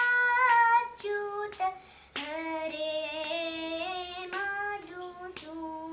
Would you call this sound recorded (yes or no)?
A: yes